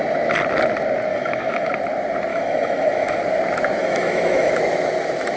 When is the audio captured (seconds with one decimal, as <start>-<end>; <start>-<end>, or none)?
0.0-1.1; 1.7-2.3; 3.2-3.8; 4.5-5.4